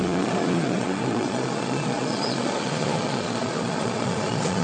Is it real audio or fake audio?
fake